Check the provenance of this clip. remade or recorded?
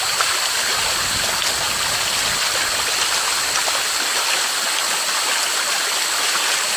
recorded